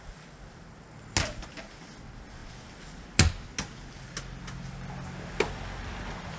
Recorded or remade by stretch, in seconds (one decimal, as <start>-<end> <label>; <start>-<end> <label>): 0.0-6.4 recorded